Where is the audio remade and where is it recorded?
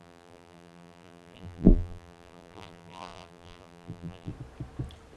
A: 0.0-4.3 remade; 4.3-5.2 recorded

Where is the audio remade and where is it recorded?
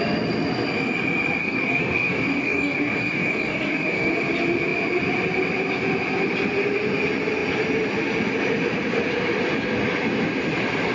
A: 0.0-1.4 recorded; 1.4-4.1 remade; 4.1-10.9 recorded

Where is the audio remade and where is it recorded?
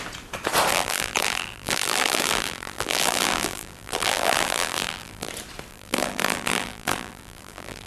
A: 0.0-0.7 recorded; 0.7-5.3 remade; 5.3-5.7 recorded; 5.7-7.9 remade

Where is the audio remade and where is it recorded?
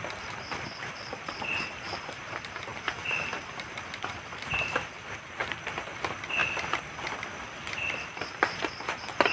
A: 0.0-2.7 remade; 2.7-4.1 recorded; 4.1-5.4 remade; 5.4-5.9 recorded; 5.9-6.4 remade; 6.4-9.3 recorded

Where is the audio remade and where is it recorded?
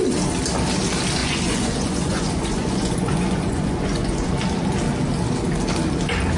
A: 0.0-1.2 recorded; 1.2-4.3 remade; 4.3-6.4 recorded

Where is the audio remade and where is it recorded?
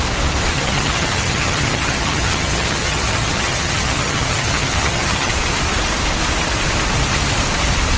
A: 0.0-0.5 recorded; 0.5-5.3 remade; 5.3-8.0 recorded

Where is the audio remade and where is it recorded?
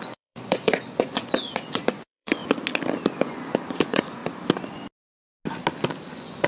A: 0.0-2.4 remade; 2.4-3.1 recorded; 3.1-4.2 remade; 4.2-6.1 recorded; 6.1-6.5 remade